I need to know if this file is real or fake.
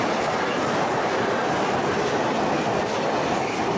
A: real